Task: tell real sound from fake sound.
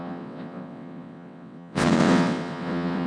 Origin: fake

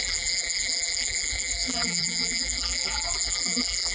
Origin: fake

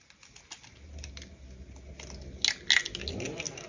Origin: real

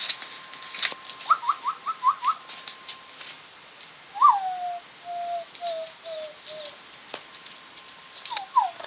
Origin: real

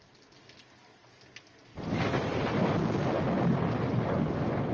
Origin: real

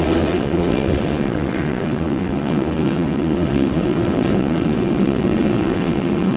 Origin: fake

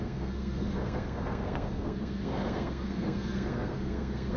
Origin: fake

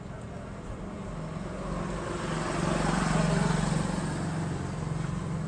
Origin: real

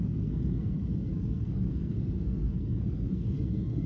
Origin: fake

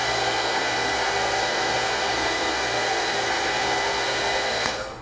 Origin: fake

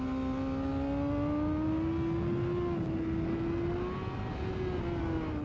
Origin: real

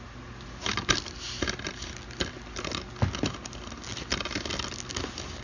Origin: real